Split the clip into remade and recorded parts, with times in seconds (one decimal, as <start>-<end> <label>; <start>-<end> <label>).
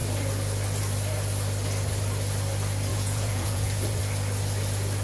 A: 0.0-2.9 recorded; 2.9-4.0 remade; 4.0-5.0 recorded